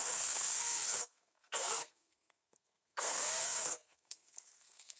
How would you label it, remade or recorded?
remade